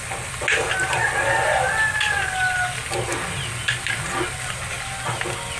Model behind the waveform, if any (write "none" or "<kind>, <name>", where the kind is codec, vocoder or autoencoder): none